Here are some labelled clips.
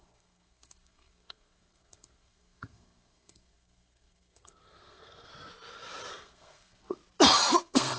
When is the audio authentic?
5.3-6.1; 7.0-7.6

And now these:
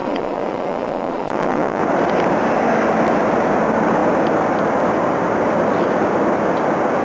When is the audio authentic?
1.8-7.0

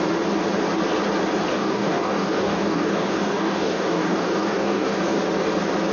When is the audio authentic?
0.0-1.5; 5.0-5.9

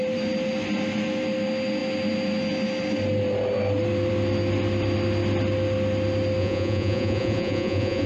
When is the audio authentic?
0.0-6.4

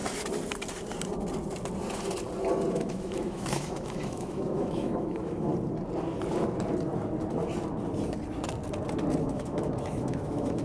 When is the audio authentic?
0.0-2.7; 5.5-9.2

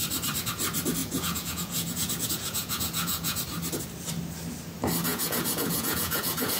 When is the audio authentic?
0.0-1.0; 3.4-5.1